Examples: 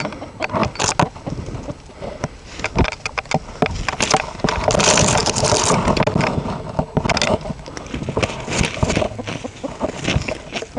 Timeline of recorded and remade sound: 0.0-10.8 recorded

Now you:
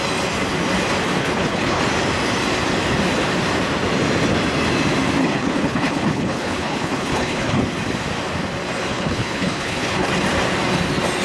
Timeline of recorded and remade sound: 0.0-1.2 recorded; 1.2-1.8 remade; 1.8-5.2 recorded; 5.2-7.6 remade; 7.6-8.9 recorded; 8.9-10.1 remade; 10.1-11.2 recorded

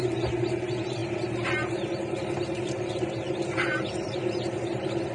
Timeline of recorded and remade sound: 0.0-5.1 remade

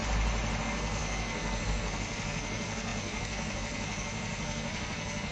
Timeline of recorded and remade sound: 0.0-0.6 recorded; 0.6-5.3 remade

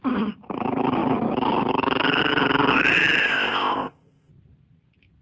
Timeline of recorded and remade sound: 0.0-3.2 recorded; 3.2-4.3 remade; 4.3-5.2 recorded

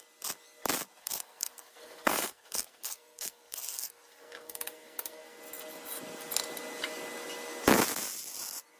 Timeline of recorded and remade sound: 0.0-1.0 recorded; 1.0-5.4 remade; 5.4-8.8 recorded